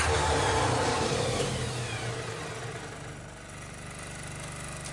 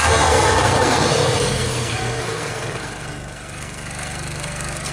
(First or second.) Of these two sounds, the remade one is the second